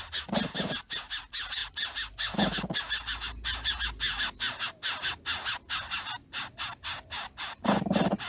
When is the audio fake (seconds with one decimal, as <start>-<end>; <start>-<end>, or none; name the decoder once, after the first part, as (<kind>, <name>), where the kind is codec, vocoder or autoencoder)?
none